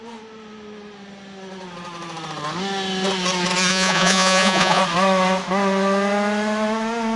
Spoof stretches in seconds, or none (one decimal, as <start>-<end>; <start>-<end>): 3.7-4.8